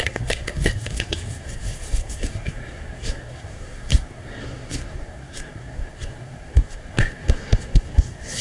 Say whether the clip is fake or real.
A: fake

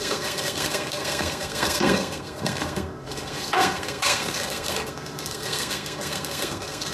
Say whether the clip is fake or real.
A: fake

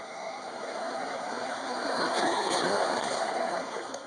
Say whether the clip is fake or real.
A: fake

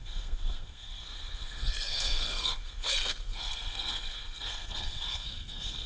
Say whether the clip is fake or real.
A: fake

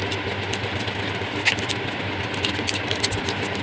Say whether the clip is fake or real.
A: real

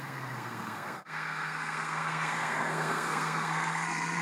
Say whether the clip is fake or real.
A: fake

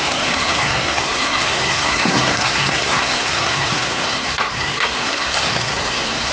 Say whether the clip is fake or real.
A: fake